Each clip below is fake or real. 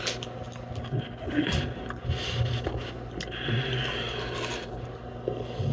real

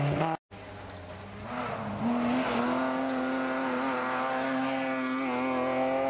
real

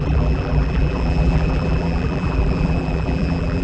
fake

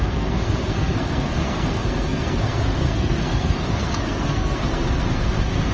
fake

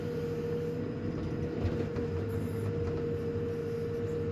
real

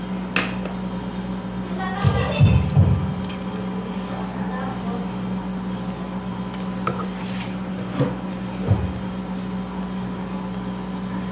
real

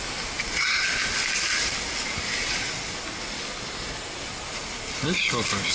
real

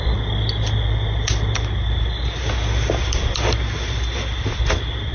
real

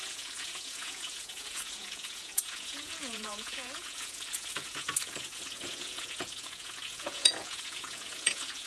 fake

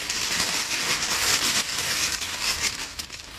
fake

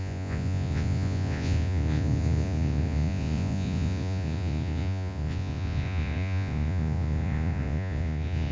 fake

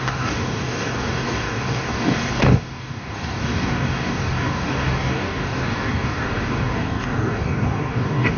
fake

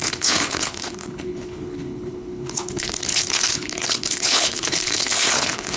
fake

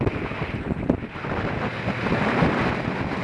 real